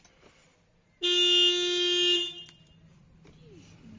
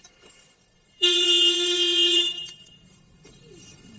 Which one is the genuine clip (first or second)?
first